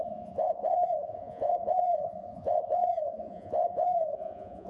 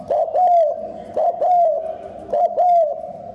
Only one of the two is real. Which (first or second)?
second